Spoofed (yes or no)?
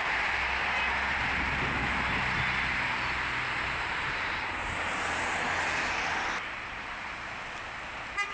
no